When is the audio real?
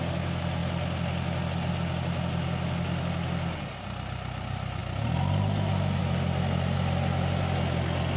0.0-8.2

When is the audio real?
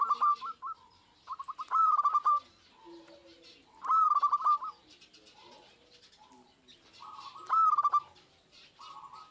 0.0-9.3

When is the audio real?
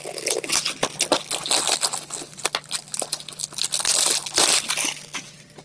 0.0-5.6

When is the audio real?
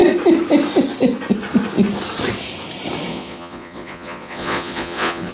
0.0-3.1